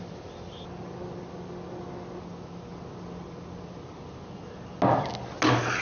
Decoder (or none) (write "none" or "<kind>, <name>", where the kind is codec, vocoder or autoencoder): none